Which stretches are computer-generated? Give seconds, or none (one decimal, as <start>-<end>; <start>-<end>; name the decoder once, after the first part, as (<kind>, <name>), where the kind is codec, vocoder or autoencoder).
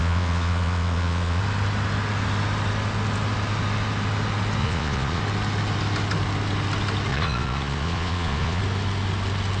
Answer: 0.0-1.4 (vocoder, Vocos); 4.6-5.2; 7.1-8.6